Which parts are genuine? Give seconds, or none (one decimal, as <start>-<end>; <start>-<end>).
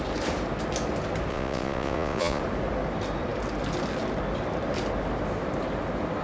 0.0-1.3; 2.4-6.2